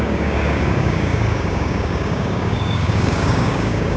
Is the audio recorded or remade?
remade